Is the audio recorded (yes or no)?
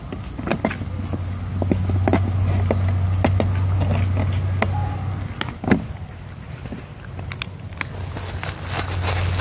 yes